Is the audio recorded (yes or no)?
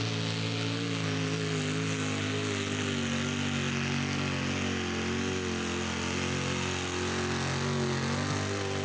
yes